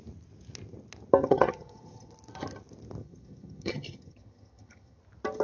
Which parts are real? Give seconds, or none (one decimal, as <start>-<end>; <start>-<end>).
0.0-1.2; 2.1-3.0; 5.0-5.4